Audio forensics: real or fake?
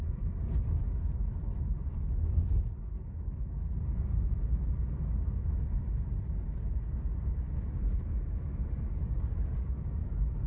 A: real